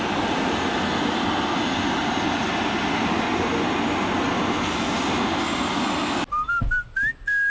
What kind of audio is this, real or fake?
real